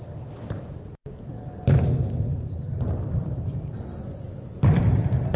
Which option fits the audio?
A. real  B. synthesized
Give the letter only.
A